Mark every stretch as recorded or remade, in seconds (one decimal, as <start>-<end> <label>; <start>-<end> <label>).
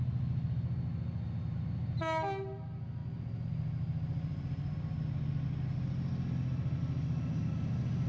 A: 0.0-8.1 recorded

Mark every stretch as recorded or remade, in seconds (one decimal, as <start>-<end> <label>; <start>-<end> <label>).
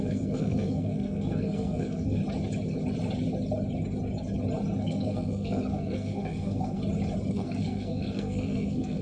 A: 0.0-2.2 remade; 2.2-4.8 recorded; 4.8-6.8 remade; 6.8-7.3 recorded; 7.3-9.0 remade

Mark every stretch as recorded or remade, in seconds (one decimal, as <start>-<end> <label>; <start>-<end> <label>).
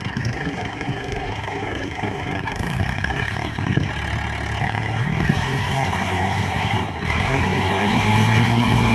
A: 0.0-3.9 remade; 3.9-4.6 recorded; 4.6-8.9 remade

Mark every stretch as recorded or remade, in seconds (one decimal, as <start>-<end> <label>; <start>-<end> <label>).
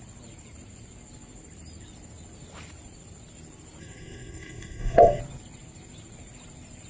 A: 0.0-3.8 recorded; 3.8-5.2 remade; 5.2-6.9 recorded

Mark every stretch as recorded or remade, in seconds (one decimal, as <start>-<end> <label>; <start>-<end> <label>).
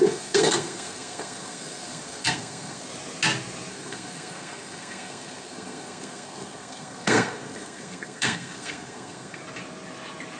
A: 0.0-2.9 remade; 2.9-3.7 recorded; 3.7-9.4 remade; 9.4-10.4 recorded